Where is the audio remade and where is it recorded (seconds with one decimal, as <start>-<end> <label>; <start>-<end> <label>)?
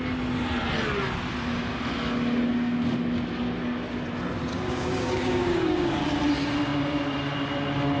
0.0-4.5 recorded; 4.5-6.0 remade; 6.0-8.0 recorded